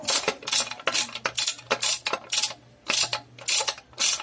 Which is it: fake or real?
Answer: real